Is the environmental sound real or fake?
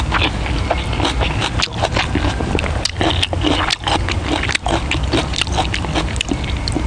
real